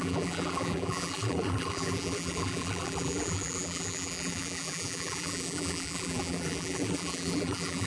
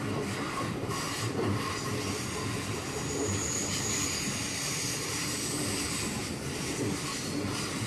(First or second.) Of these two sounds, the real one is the second